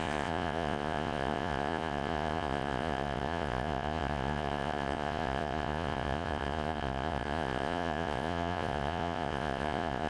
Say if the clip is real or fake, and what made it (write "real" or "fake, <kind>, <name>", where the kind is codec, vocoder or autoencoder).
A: fake, vocoder, Vocos